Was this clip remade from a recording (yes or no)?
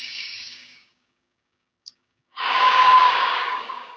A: yes